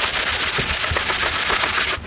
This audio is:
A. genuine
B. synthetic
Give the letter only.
A